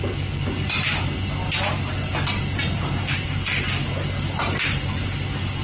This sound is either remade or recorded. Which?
recorded